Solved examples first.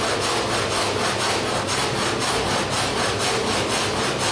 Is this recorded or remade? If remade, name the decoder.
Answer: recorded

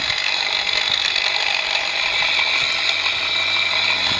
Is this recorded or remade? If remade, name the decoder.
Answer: recorded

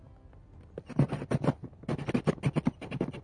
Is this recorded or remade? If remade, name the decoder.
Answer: recorded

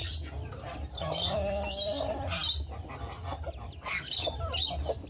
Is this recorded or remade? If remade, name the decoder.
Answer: recorded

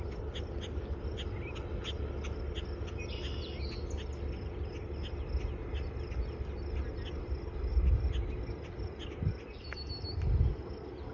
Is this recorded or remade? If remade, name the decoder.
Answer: recorded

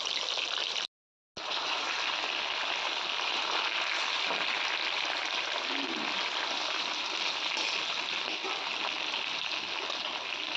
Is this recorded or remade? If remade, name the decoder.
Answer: recorded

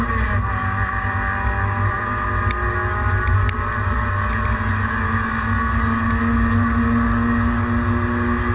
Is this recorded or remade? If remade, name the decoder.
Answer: recorded